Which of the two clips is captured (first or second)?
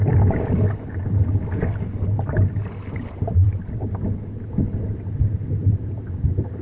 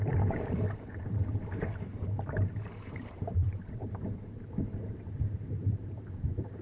first